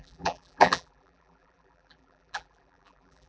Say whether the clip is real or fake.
fake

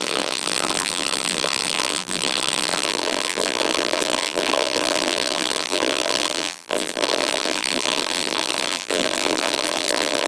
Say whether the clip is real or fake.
fake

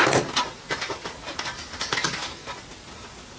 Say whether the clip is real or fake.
real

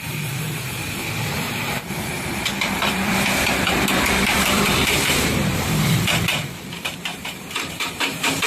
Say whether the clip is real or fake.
fake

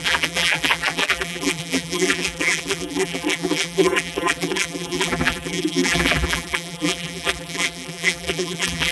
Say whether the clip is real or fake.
fake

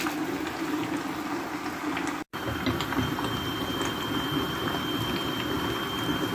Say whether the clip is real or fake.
real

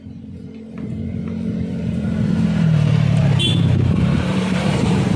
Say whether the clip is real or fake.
fake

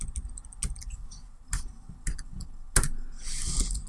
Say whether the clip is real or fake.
real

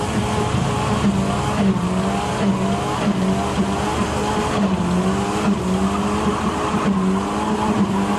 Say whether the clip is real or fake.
real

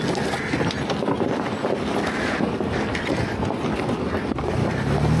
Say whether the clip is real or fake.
real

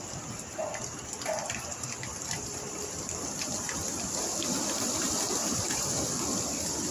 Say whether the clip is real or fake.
fake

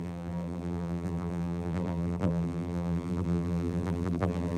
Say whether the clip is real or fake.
fake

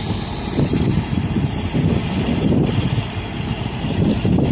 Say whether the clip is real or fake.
fake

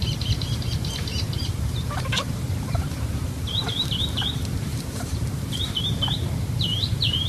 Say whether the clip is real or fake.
fake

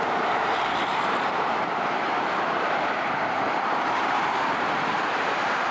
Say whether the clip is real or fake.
fake